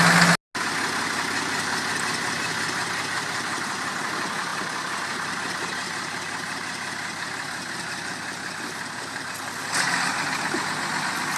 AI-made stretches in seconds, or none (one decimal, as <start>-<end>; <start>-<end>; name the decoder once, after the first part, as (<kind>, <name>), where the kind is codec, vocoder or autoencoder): 4.5-9.3 (vocoder, BigVGAN v2)